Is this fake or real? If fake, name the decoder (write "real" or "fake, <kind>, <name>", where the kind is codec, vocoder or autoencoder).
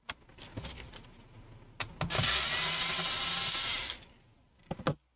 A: real